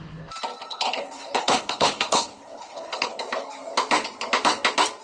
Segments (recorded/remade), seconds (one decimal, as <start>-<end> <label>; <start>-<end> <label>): 0.0-0.7 recorded; 0.7-3.2 remade; 3.2-5.0 recorded